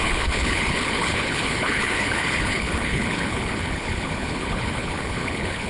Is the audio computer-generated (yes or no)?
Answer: yes